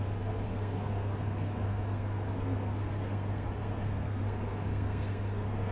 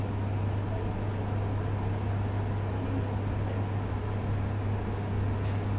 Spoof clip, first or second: first